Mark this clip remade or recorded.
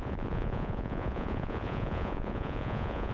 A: remade